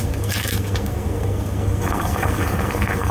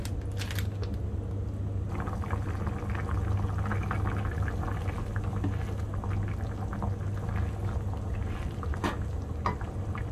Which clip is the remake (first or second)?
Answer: first